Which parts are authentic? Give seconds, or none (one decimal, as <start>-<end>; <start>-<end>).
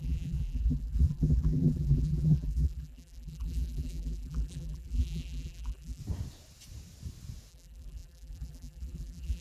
6.0-7.5